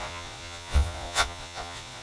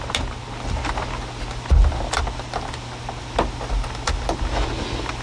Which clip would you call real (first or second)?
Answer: second